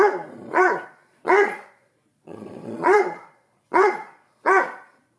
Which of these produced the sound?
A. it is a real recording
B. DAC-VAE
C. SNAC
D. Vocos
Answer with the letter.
D